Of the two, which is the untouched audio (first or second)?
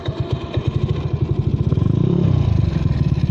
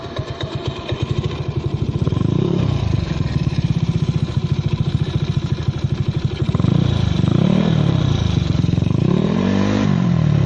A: first